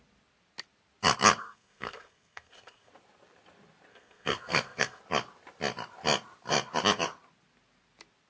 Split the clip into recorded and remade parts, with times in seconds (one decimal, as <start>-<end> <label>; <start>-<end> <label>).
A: 0.0-1.4 recorded; 1.4-2.9 remade; 2.9-3.9 recorded; 3.9-5.0 remade; 5.0-8.3 recorded